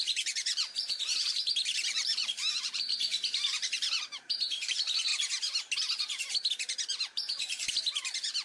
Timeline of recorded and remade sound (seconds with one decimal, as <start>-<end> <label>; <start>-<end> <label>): 0.0-5.1 remade; 5.1-6.5 recorded; 6.5-8.4 remade